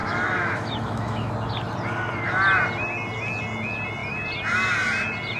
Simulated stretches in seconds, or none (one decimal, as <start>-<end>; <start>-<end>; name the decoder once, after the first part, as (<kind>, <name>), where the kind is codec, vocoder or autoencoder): 0.0-1.3 (autoencoder, DAC-VAE)